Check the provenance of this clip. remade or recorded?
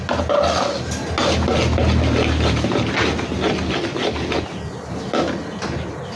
recorded